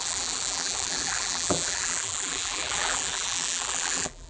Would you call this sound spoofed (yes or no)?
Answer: yes